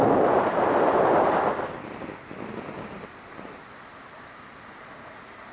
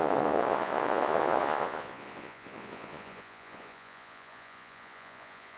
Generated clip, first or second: second